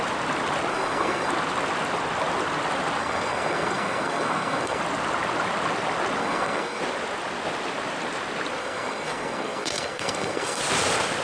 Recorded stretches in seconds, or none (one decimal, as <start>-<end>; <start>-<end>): 0.0-0.7; 1.3-3.0; 4.8-6.2; 6.8-8.6; 10.6-11.2